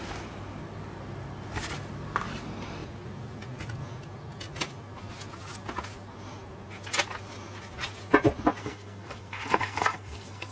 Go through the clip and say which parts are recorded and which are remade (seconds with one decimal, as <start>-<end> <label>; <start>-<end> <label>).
0.0-8.6 recorded; 8.6-10.5 remade